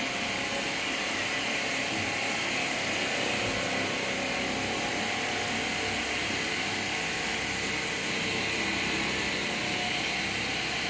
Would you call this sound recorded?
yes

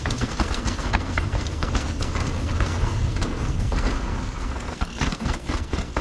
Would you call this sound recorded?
no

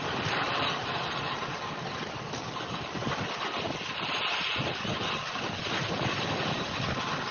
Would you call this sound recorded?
no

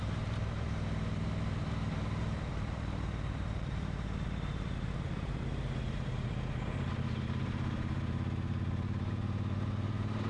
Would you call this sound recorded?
no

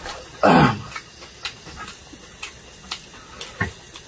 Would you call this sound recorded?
yes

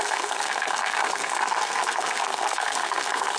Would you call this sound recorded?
no